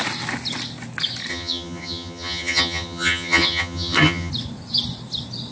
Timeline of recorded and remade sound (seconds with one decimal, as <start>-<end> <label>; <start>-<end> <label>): 0.0-1.3 recorded; 1.3-4.3 remade; 4.3-5.5 recorded